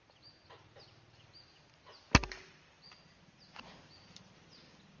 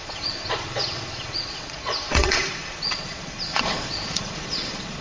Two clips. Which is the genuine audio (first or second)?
first